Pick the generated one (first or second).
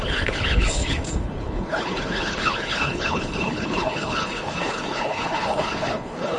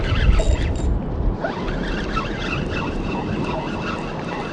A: first